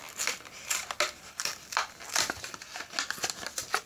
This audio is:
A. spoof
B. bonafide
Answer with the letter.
B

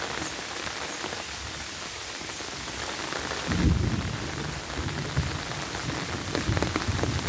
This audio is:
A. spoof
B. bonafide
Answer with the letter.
B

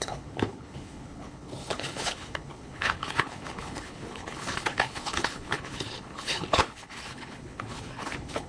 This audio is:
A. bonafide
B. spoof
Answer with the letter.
B